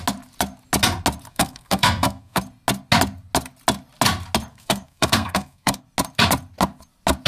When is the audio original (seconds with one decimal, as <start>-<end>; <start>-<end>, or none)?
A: 0.0-1.3; 2.4-4.5; 5.8-7.3